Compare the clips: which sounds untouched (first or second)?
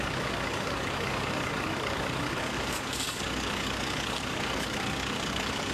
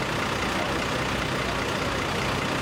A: second